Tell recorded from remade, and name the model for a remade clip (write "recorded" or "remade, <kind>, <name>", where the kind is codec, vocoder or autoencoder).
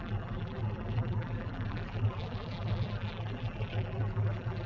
remade, vocoder, BigVGAN v2